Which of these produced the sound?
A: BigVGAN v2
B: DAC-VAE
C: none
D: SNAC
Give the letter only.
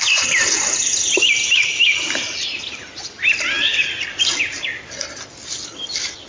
C